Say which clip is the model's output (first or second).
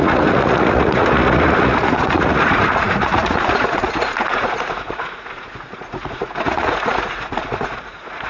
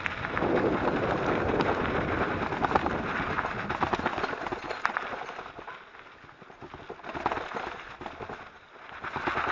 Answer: first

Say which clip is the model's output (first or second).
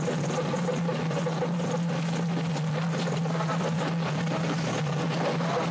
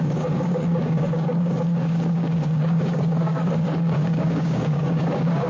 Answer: second